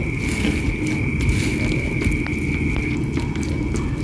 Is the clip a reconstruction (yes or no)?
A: no